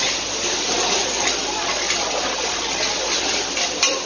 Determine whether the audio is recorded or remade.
recorded